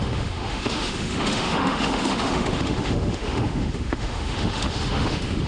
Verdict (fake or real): fake